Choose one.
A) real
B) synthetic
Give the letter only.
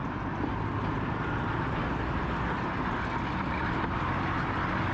A